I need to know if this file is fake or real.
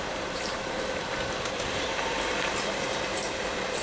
fake